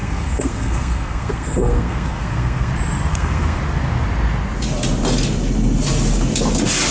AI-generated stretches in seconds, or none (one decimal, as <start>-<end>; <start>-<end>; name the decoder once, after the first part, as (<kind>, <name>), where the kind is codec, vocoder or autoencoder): 0.0-2.7 (codec, SNAC); 3.1-3.6